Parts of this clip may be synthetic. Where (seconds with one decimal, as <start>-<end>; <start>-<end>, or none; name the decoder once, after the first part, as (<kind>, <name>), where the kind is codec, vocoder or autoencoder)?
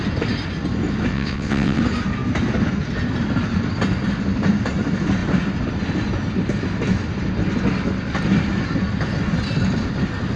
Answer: 1.1-1.8 (vocoder, WaveNeXt)